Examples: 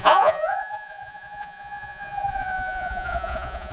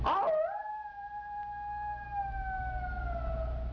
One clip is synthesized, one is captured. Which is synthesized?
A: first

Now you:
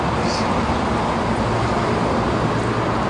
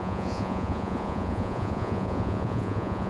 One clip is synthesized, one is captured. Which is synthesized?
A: second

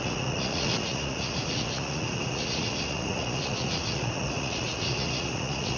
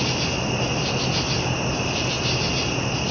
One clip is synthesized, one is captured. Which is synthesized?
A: first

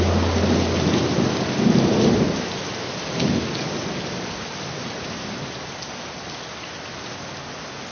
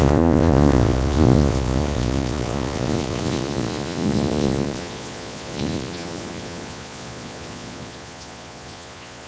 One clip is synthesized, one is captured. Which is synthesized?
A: second